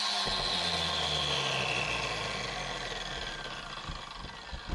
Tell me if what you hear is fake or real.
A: real